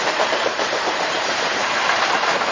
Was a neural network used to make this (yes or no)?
yes